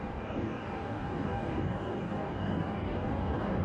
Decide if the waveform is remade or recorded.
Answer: remade